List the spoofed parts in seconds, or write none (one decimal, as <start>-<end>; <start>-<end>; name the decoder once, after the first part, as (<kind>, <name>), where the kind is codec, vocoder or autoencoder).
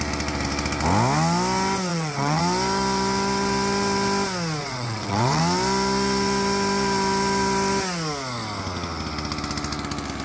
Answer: 1.9-2.4 (vocoder, WaveNeXt); 4.6-5.4